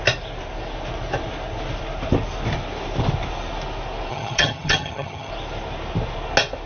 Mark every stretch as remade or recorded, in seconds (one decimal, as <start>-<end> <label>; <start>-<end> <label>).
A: 0.0-4.1 recorded; 4.1-5.3 remade; 5.3-6.7 recorded